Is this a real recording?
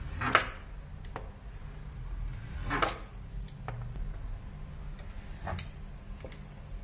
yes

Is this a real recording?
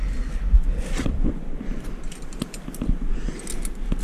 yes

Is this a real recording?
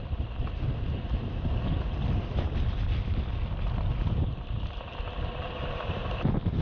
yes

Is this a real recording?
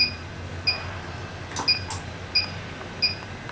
yes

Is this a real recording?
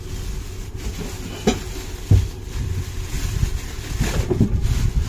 yes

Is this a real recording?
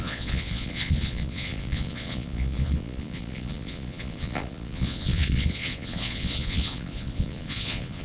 no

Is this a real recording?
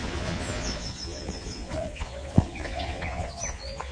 no